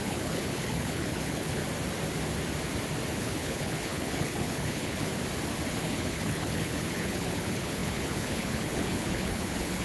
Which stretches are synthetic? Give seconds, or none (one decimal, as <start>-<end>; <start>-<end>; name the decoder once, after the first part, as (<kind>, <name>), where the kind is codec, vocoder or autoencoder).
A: 0.0-1.6 (codec, HILCodec); 3.2-5.1; 5.7-9.8